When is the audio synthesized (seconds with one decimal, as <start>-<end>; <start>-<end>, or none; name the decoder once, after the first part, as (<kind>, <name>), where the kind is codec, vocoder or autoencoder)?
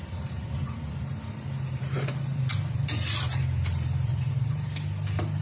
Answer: 0.0-2.5 (vocoder, BigVGAN v2); 3.1-4.7